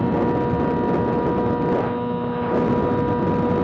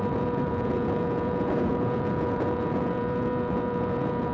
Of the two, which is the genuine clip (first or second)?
first